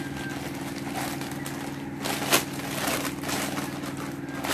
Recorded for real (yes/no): yes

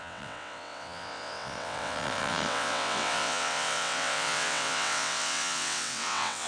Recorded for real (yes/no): no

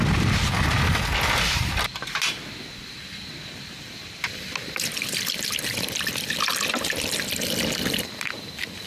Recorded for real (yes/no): no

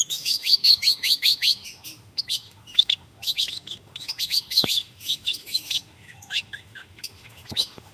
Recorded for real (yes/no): no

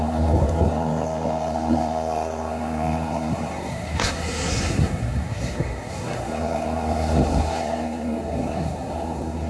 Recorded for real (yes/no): no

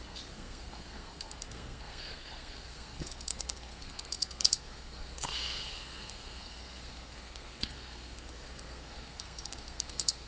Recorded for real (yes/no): no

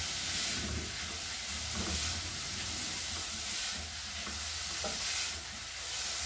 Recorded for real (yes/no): yes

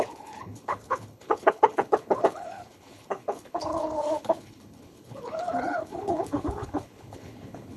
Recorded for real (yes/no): no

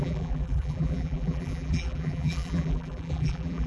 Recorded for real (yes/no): no